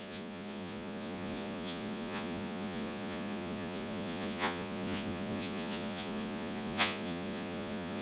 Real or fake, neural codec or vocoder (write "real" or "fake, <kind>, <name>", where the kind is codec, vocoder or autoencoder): fake, vocoder, Vocos